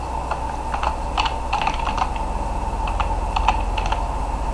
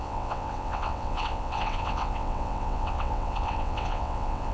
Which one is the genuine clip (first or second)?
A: first